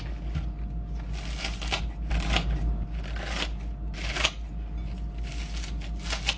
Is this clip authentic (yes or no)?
yes